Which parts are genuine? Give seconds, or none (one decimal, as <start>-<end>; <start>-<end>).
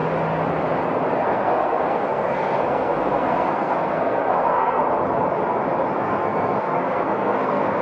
0.0-1.2; 4.8-6.0